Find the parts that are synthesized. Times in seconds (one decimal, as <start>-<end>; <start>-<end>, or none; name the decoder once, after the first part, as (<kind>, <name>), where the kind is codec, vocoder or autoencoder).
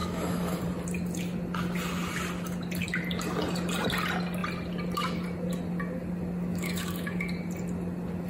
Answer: 0.0-0.6 (autoencoder, DAC-VAE); 6.5-7.2